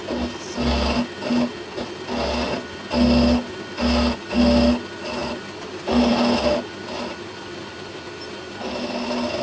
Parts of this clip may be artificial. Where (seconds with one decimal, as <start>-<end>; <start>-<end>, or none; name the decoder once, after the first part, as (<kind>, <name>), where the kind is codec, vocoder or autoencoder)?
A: none

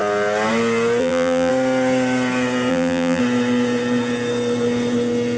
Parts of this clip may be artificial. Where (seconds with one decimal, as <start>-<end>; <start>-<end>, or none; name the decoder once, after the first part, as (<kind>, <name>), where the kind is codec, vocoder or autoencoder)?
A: 1.0-1.5 (vocoder, BigVGAN v2); 2.7-3.2

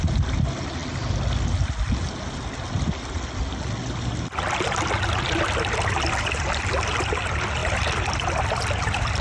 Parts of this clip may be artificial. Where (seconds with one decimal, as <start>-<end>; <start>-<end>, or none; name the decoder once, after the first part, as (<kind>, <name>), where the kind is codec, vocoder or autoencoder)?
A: 7.6-9.2 (vocoder, BigVGAN v2)

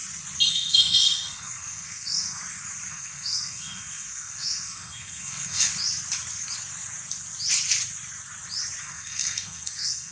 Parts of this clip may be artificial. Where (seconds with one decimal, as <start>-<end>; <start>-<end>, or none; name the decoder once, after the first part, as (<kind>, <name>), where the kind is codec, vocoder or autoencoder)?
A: 0.5-2.4 (codec, SNAC); 2.9-5.7; 8.8-10.1

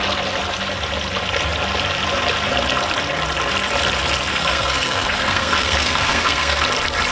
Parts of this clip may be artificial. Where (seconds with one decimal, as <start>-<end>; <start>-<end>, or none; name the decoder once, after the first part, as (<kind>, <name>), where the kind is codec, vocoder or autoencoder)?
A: 4.3-6.6 (codec, SNAC)